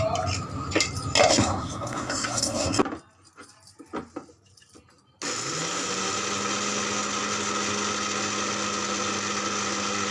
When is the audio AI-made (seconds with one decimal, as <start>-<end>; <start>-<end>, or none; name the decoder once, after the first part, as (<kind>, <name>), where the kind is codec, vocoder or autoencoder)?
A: 1.3-2.8 (codec, SNAC)

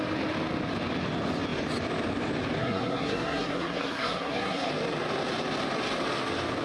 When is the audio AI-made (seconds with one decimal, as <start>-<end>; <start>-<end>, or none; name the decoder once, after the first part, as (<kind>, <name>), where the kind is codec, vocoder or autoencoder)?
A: 2.6-4.7 (codec, SNAC)